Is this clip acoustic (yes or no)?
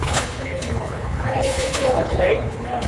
no